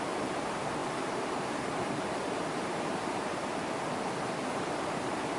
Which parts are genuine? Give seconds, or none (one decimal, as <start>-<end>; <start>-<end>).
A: 3.4-5.4